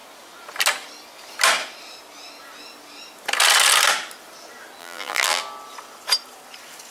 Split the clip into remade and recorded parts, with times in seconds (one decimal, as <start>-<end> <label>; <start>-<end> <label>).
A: 0.0-4.8 recorded; 4.8-5.4 remade; 5.4-6.9 recorded

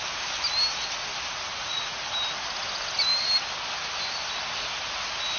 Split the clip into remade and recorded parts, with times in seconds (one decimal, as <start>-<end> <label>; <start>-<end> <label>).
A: 0.0-1.5 recorded; 1.5-2.0 remade; 2.0-5.4 recorded

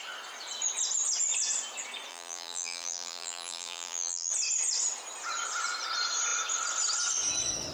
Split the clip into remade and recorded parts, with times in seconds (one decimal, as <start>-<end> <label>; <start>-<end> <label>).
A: 0.0-2.1 recorded; 2.1-4.3 remade; 4.3-7.7 recorded

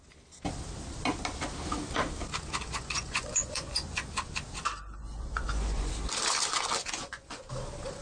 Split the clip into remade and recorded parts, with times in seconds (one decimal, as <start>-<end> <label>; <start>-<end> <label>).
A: 0.0-2.6 recorded; 2.6-4.1 remade; 4.1-5.0 recorded; 5.0-5.9 remade; 5.9-6.8 recorded; 6.8-7.5 remade; 7.5-8.0 recorded